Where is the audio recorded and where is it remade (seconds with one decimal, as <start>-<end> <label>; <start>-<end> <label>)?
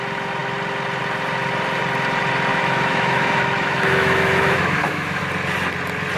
0.0-2.5 recorded; 2.5-5.2 remade; 5.2-6.2 recorded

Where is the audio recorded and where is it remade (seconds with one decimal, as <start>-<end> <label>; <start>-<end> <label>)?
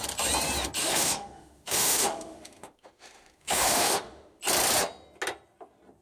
0.0-0.8 recorded; 0.8-4.4 remade; 4.4-6.0 recorded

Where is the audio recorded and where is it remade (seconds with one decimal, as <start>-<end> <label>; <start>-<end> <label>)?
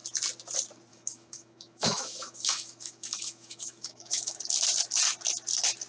0.0-0.9 recorded; 0.9-4.4 remade; 4.4-5.9 recorded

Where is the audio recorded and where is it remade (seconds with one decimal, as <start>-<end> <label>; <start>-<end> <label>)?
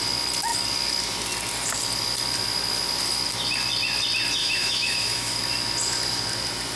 0.0-4.4 recorded; 4.4-5.4 remade; 5.4-6.8 recorded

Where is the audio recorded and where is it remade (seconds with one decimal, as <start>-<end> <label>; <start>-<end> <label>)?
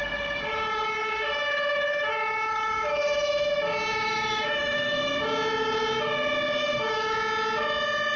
0.0-1.0 recorded; 1.0-3.5 remade; 3.5-3.9 recorded; 3.9-5.1 remade; 5.1-6.6 recorded; 6.6-7.1 remade; 7.1-8.2 recorded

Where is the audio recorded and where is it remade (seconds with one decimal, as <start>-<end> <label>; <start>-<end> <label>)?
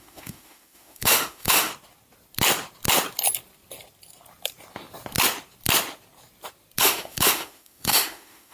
0.0-1.7 remade; 1.7-6.8 recorded; 6.8-8.5 remade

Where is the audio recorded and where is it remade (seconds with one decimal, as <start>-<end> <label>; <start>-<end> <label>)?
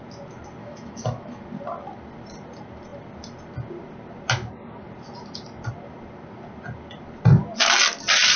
0.0-0.6 recorded; 0.6-1.4 remade; 1.4-8.4 recorded